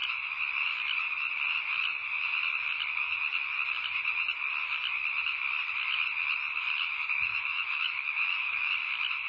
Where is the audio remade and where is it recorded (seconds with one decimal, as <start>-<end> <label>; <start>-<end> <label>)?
0.0-7.3 recorded; 7.3-8.7 remade; 8.7-9.3 recorded